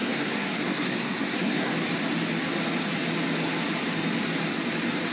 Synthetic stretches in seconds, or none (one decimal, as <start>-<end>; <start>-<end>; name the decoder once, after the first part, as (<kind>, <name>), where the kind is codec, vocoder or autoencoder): 0.0-1.7 (codec, SNAC)